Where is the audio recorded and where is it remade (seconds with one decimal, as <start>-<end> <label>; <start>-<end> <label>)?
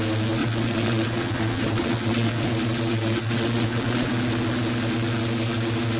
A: 0.0-0.4 recorded; 0.4-2.5 remade; 2.5-2.9 recorded; 2.9-4.1 remade; 4.1-6.0 recorded